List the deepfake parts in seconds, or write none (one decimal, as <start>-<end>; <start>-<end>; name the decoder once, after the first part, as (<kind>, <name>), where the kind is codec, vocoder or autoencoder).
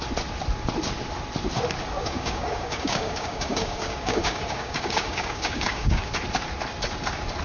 2.0-6.1 (codec, DAC)